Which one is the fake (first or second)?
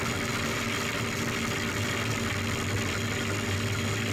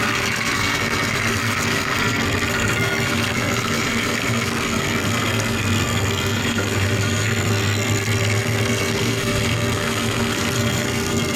second